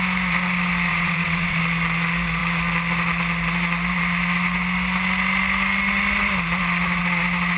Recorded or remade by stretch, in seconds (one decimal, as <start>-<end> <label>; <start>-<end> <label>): 0.0-0.9 recorded; 0.9-1.6 remade; 1.6-7.6 recorded